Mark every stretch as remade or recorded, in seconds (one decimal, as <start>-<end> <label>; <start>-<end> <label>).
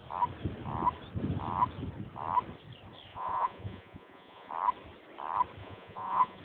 0.0-3.1 recorded; 3.1-4.5 remade; 4.5-5.6 recorded; 5.6-6.4 remade